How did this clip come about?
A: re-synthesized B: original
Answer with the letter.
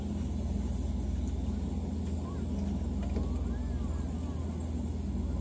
B